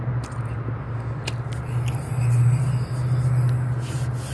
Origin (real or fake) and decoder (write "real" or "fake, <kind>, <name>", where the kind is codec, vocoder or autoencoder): real